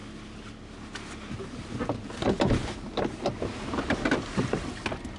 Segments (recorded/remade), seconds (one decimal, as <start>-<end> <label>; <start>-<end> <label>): 0.0-5.2 recorded